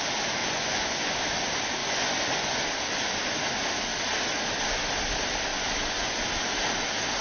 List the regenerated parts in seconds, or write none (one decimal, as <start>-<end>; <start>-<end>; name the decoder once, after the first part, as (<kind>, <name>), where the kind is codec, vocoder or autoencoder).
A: 0.4-1.2 (vocoder, Vocos); 1.8-2.6; 5.5-6.2